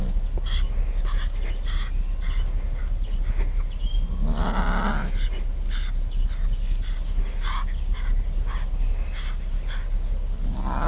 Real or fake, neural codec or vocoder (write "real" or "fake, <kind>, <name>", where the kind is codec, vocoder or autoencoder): real